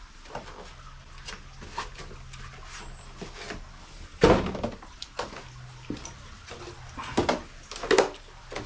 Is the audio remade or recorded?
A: recorded